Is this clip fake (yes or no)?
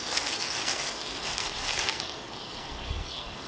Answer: yes